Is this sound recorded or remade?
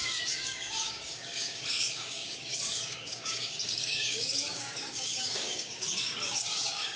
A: remade